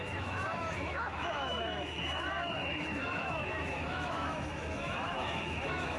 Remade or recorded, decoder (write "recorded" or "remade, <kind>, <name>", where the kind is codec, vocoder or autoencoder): remade, autoencoder, DAC-VAE